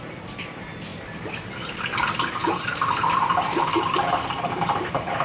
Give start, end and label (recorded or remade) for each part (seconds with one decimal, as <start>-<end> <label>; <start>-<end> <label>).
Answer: 0.0-2.4 recorded; 2.4-3.8 remade; 3.8-5.2 recorded